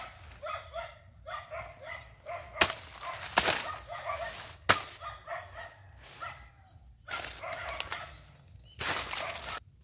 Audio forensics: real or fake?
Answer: real